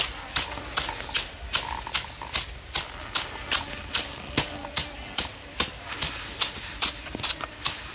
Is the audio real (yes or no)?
yes